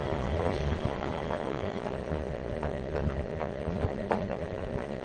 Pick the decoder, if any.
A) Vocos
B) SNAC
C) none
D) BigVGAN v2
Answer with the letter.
A